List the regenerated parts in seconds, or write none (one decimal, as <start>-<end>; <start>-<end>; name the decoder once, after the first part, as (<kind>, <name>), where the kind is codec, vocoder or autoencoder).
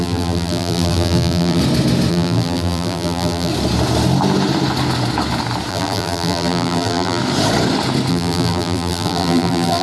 0.0-1.6 (vocoder, BigVGAN v2); 2.1-3.5; 5.7-7.2; 8.1-9.8